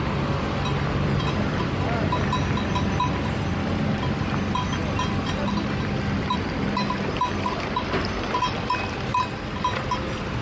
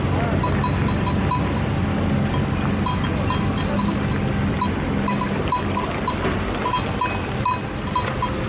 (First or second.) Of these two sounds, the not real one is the first